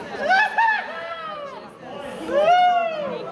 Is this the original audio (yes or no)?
yes